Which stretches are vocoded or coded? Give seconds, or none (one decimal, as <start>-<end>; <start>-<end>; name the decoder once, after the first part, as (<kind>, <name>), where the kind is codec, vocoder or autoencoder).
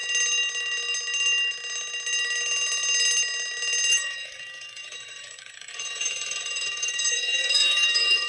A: 3.9-8.3 (codec, DAC)